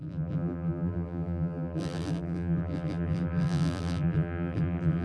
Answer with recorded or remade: remade